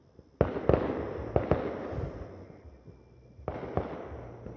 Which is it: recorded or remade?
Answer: recorded